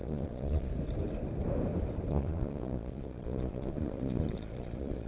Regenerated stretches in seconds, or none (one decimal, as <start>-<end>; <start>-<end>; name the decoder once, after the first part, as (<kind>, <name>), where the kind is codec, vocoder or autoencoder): 0.0-0.7 (vocoder, Vocos); 2.1-5.1